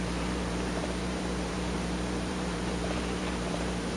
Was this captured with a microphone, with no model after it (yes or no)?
no